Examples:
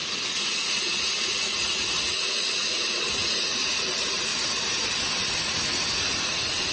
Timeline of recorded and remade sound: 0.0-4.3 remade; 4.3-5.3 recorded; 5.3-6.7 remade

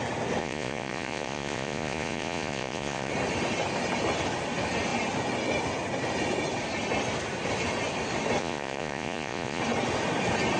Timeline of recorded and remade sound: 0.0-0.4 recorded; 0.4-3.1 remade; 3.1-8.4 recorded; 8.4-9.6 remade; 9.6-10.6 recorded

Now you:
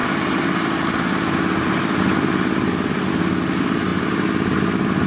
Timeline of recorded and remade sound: 0.0-5.1 recorded

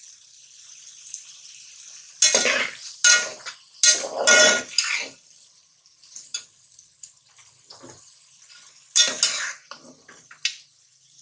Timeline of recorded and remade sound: 0.0-11.2 recorded

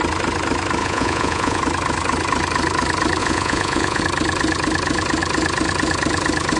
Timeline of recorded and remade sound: 0.0-0.8 recorded; 0.8-1.6 remade; 1.6-3.2 recorded; 3.2-4.0 remade; 4.0-6.6 recorded

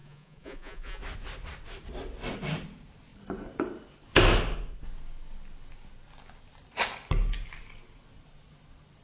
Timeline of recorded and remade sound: 0.0-1.0 remade; 1.0-9.0 recorded

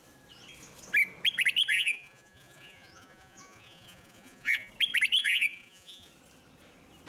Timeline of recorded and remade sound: 0.0-1.7 recorded; 1.7-4.7 remade; 4.7-5.2 recorded; 5.2-6.1 remade; 6.1-7.1 recorded

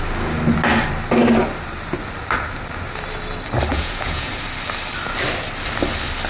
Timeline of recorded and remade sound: 0.0-3.7 recorded; 3.7-4.3 remade; 4.3-6.3 recorded